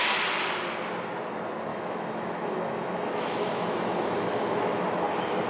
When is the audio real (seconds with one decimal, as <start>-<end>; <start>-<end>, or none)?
0.0-1.7; 5.0-5.5